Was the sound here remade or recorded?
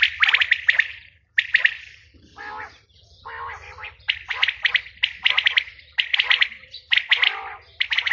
recorded